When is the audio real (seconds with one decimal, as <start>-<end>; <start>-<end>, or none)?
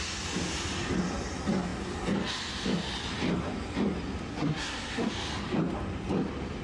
0.0-4.3; 5.1-6.6